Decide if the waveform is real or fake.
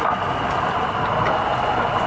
real